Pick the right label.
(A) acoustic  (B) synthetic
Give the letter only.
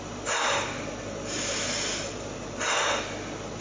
A